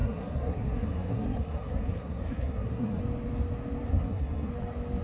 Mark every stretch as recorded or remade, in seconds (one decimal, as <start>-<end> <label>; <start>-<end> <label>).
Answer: 0.0-3.0 remade; 3.0-3.9 recorded; 3.9-4.5 remade; 4.5-5.0 recorded